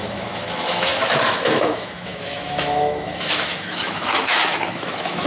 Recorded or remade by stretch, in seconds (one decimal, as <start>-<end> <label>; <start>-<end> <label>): 0.0-5.3 remade